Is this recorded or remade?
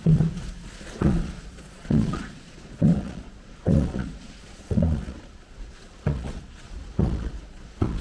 remade